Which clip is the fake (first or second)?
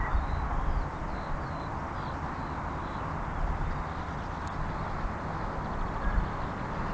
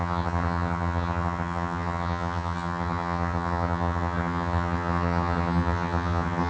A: second